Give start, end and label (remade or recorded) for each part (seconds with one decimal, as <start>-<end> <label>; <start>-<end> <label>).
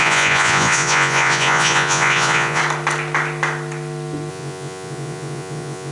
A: 0.0-2.6 remade; 2.6-4.3 recorded; 4.3-5.9 remade